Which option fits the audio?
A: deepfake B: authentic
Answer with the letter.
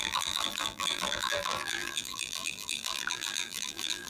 A